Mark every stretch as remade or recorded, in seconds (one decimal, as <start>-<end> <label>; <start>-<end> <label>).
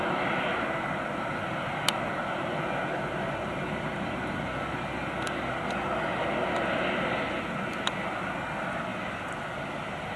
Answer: 0.0-10.2 recorded